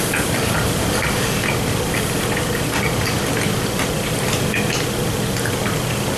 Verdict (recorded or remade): recorded